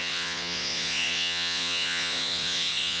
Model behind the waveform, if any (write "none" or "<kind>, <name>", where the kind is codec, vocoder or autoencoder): vocoder, Vocos